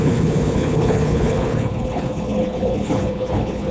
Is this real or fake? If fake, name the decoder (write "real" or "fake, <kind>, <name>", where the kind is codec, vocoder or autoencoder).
fake, codec, HILCodec